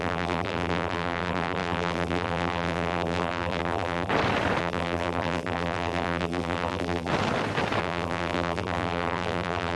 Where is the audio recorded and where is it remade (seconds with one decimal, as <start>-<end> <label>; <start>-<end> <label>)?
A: 0.0-4.1 remade; 4.1-4.6 recorded; 4.6-7.1 remade; 7.1-7.8 recorded; 7.8-9.8 remade

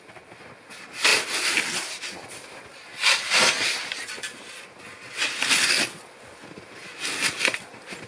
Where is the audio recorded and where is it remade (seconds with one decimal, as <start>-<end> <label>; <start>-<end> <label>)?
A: 0.0-8.1 recorded

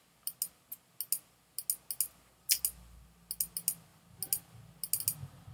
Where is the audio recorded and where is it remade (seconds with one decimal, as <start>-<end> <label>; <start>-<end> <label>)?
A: 0.0-5.5 recorded